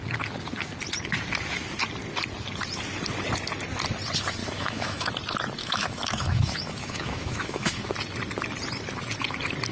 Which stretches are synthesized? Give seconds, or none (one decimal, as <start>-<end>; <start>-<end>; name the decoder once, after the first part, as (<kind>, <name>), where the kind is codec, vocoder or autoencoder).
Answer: 4.4-5.1 (autoencoder, DAC-VAE); 5.6-7.9